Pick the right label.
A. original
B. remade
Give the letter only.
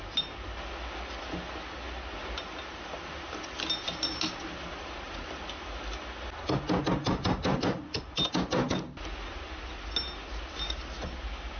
A